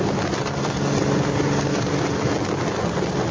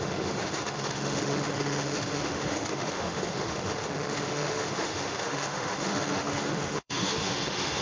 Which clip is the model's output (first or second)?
second